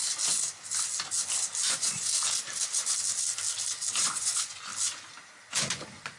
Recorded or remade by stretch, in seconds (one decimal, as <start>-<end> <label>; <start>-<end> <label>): 0.0-1.7 recorded; 1.7-2.1 remade; 2.1-4.0 recorded; 4.0-4.7 remade; 4.7-5.6 recorded; 5.6-6.2 remade

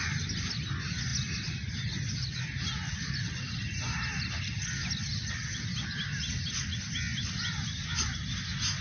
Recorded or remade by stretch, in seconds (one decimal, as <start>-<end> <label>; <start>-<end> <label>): 0.0-8.8 recorded